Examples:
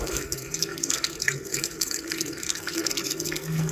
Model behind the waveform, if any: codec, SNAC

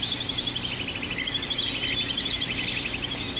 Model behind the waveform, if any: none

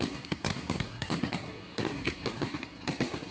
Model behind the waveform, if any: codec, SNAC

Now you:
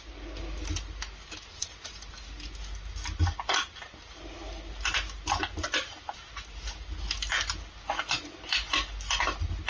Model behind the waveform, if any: none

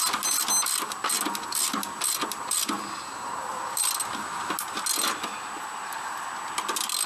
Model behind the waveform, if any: none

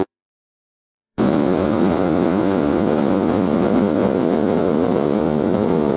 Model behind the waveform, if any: vocoder, Vocos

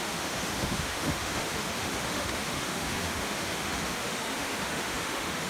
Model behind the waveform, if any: autoencoder, DAC-VAE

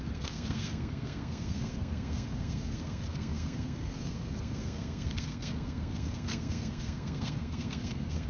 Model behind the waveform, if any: codec, SNAC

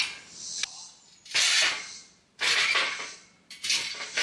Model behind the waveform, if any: none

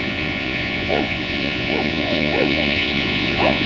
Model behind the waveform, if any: vocoder, Vocos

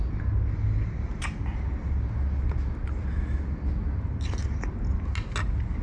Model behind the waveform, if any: none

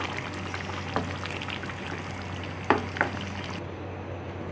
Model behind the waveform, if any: none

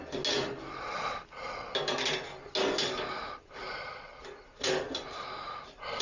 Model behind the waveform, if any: none